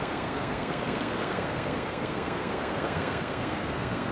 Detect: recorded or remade remade